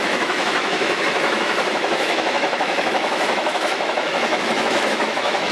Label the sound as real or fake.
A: fake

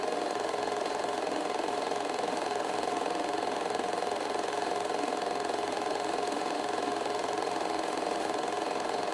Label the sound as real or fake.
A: fake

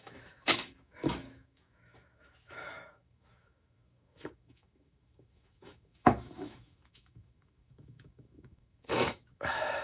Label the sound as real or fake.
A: fake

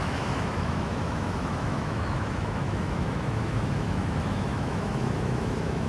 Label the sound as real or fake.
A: fake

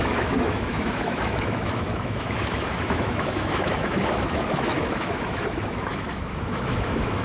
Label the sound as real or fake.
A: fake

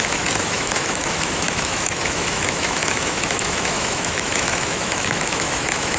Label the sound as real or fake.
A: fake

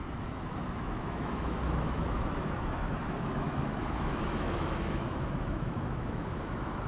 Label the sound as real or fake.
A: fake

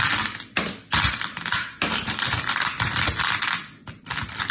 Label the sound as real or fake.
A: real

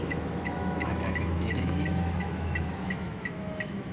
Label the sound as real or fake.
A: fake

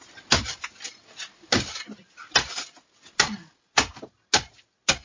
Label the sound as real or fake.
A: real